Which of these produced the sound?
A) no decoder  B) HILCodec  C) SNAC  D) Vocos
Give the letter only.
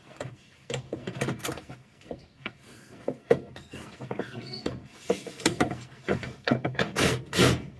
C